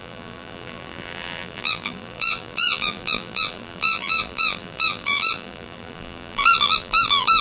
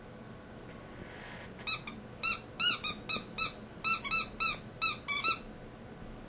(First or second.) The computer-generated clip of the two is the first